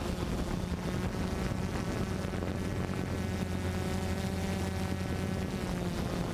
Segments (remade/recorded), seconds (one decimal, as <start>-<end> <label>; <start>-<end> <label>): 0.0-6.3 recorded